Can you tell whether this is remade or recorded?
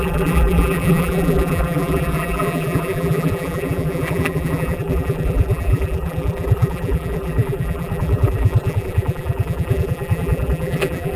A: remade